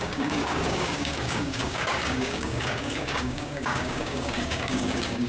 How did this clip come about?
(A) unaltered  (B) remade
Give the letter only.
B